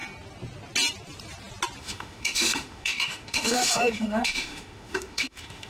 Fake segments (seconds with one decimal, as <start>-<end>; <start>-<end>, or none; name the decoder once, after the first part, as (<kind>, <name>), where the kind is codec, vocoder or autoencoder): 1.8-5.7 (autoencoder, DAC-VAE)